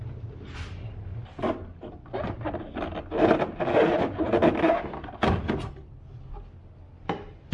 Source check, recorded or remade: recorded